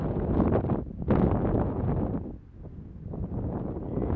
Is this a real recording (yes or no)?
yes